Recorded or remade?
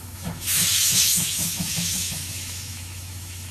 remade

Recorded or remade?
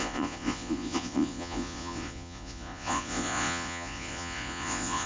remade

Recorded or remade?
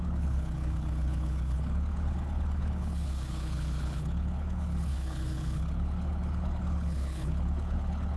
remade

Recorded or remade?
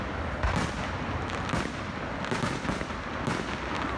recorded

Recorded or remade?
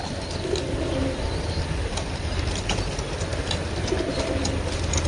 recorded